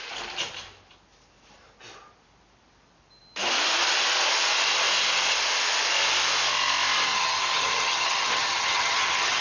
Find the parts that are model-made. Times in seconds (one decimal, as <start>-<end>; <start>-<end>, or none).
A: 7.1-9.4